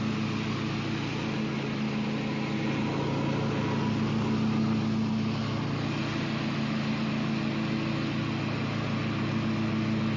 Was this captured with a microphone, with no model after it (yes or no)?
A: yes